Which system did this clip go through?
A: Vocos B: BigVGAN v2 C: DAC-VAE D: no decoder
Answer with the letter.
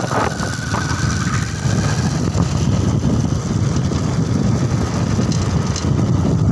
D